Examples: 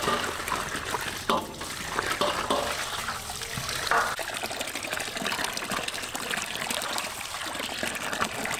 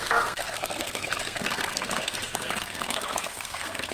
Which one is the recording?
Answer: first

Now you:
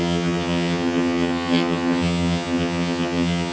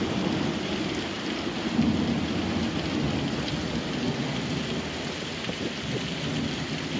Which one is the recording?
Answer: second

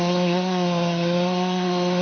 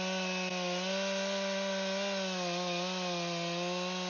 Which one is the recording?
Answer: second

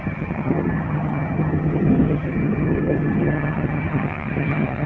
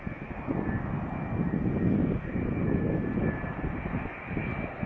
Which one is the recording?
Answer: second